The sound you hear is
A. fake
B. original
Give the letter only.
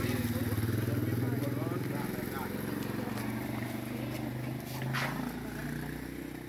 B